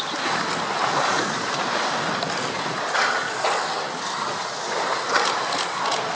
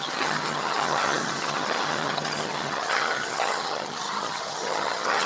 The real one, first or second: first